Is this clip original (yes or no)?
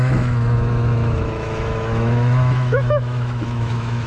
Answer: no